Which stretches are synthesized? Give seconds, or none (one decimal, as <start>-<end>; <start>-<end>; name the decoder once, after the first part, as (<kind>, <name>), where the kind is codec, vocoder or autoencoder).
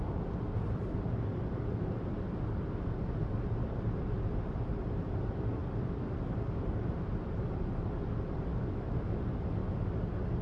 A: 8.5-9.2 (autoencoder, DAC-VAE)